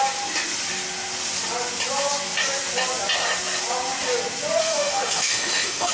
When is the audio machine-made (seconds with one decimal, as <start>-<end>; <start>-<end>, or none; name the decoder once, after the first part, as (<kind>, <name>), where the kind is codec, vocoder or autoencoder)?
4.6-5.9 (autoencoder, DAC-VAE)